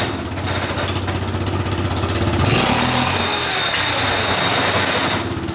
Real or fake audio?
real